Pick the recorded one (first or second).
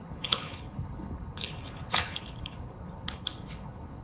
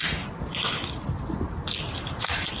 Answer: second